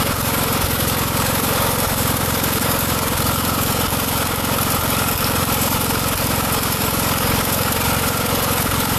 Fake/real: fake